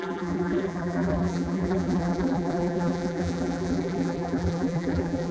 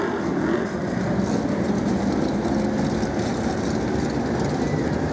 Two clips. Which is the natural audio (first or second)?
second